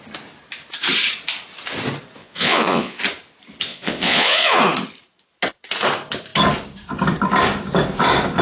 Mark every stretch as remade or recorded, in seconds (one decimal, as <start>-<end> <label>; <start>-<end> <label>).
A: 0.0-2.2 recorded; 2.2-3.0 remade; 3.0-3.7 recorded; 3.7-4.6 remade; 4.6-8.4 recorded